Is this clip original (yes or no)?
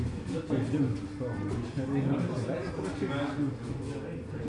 yes